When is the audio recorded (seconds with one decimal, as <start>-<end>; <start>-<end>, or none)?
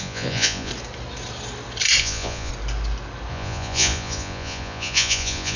0.7-2.0; 2.5-3.3